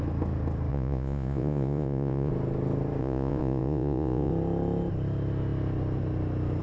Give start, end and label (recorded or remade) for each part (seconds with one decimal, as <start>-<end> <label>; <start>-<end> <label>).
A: 0.0-0.7 recorded; 0.7-2.3 remade; 2.3-3.0 recorded; 3.0-4.3 remade; 4.3-6.6 recorded